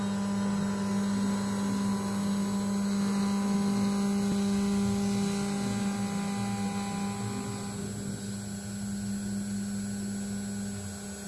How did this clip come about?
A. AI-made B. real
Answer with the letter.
B